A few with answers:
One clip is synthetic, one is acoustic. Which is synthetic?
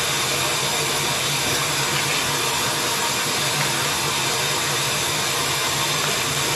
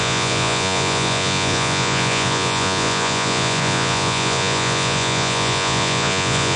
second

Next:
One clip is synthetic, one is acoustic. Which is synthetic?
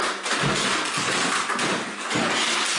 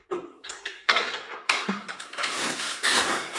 second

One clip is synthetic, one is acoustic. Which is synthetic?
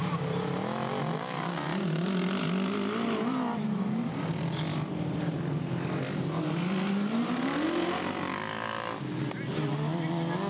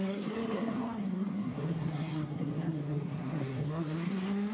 second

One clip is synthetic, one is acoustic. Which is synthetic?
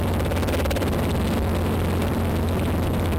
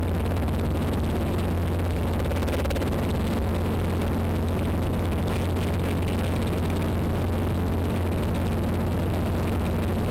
first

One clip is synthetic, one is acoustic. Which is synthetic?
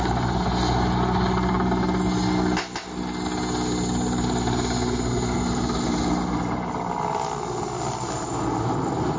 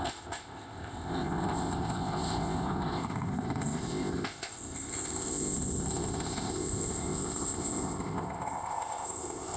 second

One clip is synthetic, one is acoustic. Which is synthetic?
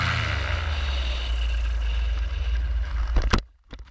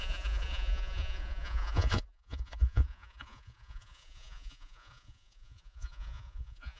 second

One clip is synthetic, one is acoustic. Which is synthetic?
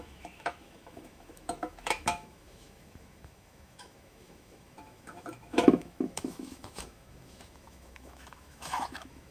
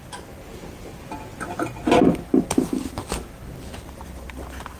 first